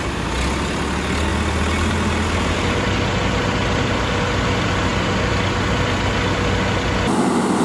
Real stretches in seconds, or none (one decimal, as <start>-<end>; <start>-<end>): 0.0-7.6

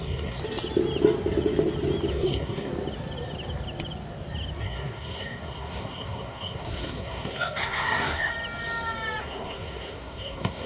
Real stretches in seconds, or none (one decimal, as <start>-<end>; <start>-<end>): 0.4-2.1; 2.7-4.6; 8.3-9.2